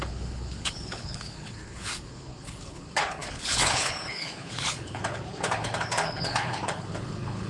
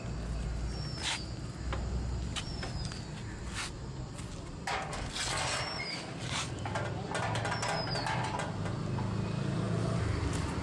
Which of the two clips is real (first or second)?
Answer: second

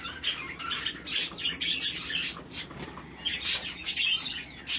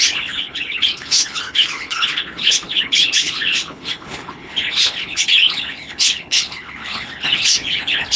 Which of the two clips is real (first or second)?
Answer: first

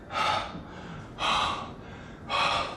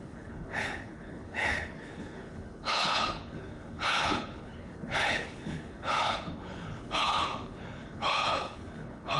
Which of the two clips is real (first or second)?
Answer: first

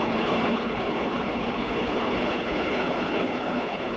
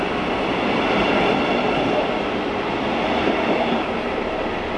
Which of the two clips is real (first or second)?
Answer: second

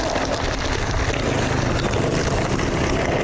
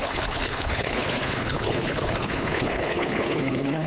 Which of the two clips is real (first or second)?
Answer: first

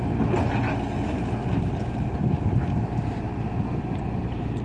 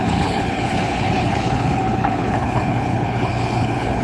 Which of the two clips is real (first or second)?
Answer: first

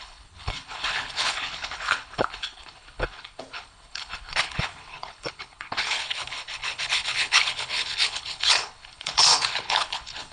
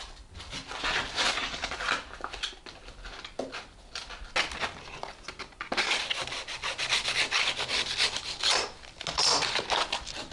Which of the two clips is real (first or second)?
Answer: second